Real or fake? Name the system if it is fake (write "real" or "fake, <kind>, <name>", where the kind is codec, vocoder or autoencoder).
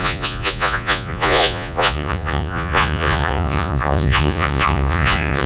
fake, vocoder, Vocos